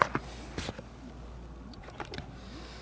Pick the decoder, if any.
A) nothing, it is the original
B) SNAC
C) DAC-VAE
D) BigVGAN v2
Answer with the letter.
A